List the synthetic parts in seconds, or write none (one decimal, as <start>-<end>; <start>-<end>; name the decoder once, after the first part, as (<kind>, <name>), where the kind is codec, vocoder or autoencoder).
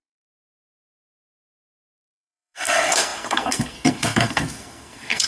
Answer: 0.0-5.3 (codec, SNAC)